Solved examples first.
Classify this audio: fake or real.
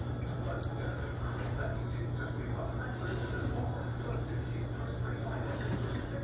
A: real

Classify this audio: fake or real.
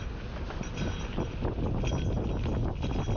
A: real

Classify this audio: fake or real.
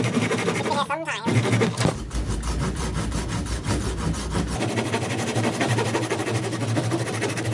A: real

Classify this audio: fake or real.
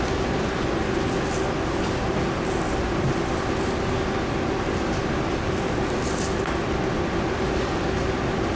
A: real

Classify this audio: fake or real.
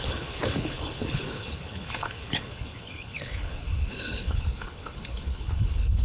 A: fake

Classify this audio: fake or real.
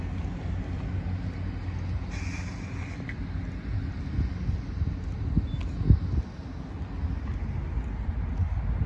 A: real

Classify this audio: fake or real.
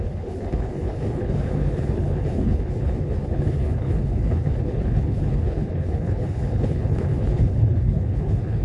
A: fake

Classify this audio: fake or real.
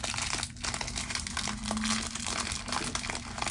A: real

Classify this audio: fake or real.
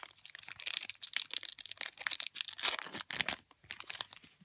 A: real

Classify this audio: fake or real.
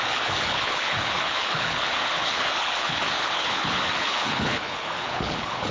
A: fake